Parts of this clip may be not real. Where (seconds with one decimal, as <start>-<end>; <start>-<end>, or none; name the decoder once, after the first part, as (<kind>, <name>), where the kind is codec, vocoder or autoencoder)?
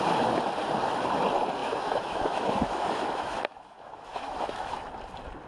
1.6-4.9 (autoencoder, DAC-VAE)